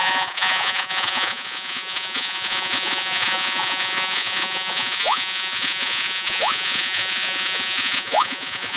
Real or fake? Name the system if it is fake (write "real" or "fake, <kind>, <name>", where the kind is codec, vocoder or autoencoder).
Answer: fake, vocoder, Vocos